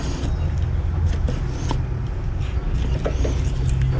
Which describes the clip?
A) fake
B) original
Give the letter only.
B